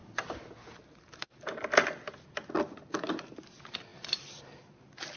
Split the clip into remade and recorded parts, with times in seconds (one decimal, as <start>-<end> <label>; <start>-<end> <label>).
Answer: 0.0-0.5 remade; 0.5-5.2 recorded